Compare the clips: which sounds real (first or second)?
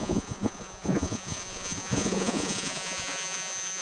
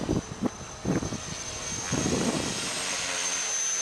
second